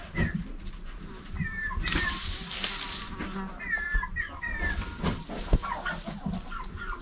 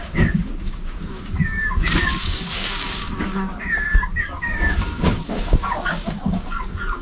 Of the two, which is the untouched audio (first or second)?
first